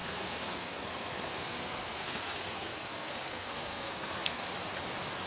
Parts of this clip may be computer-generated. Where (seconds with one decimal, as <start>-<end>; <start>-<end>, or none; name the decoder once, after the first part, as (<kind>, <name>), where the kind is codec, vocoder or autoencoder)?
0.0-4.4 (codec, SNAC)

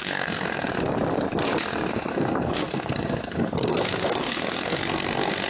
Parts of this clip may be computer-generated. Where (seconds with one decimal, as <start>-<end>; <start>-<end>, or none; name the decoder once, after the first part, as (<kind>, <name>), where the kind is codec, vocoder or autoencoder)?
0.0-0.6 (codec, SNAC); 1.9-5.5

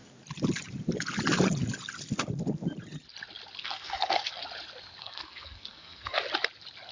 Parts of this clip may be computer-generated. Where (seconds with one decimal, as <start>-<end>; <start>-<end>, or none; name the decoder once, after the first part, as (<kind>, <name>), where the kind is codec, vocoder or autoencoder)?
3.6-4.4 (codec, SNAC); 5.0-6.2

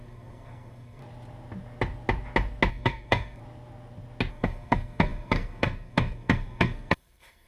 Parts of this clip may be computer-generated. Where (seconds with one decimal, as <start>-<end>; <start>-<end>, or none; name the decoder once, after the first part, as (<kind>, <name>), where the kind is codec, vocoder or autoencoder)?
0.0-1.0 (codec, SNAC); 2.7-3.4; 4.3-7.5